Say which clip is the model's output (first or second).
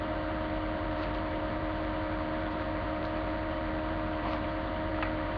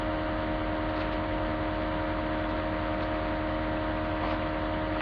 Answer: first